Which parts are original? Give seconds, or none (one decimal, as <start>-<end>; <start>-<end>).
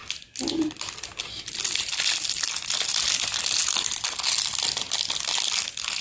0.0-6.0